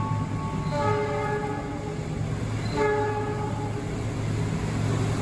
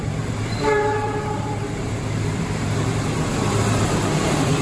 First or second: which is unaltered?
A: first